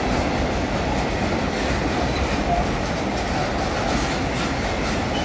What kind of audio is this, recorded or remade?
recorded